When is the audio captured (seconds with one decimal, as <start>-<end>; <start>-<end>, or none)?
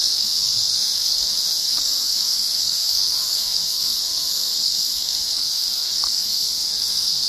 none